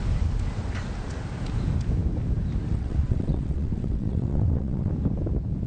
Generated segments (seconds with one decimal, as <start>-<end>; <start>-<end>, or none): 2.7-4.9

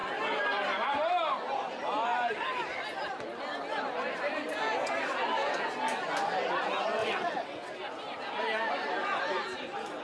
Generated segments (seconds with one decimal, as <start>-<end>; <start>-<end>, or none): 7.0-7.7